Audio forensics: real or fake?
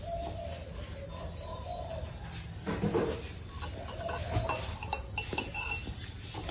real